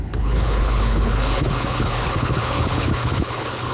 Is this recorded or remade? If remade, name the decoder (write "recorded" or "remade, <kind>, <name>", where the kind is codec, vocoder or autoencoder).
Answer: remade, codec, HILCodec